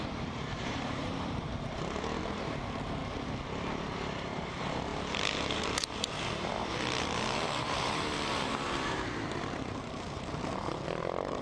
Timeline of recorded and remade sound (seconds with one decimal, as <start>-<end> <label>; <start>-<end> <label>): 0.0-1.5 remade; 1.5-2.2 recorded; 2.2-3.0 remade; 3.0-4.5 recorded; 4.5-6.5 remade; 6.5-7.6 recorded; 7.6-11.4 remade